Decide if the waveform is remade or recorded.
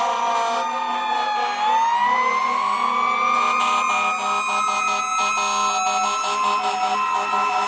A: recorded